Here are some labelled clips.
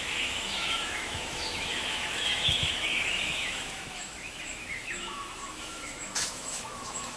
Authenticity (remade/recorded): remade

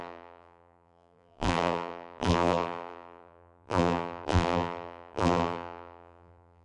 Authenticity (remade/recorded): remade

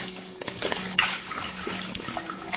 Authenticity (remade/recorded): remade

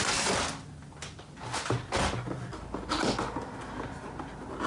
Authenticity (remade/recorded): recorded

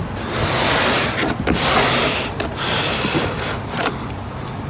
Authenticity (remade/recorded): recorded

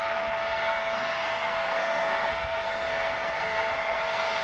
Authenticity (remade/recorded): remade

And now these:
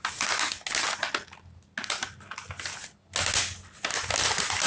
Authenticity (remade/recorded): recorded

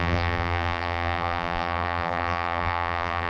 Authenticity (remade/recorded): remade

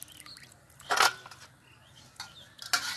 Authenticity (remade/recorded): recorded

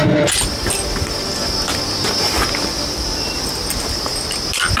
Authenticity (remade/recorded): recorded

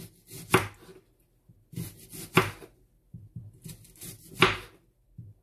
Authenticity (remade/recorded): recorded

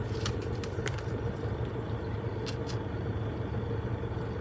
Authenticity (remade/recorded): recorded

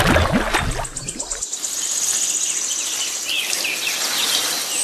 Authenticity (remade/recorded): recorded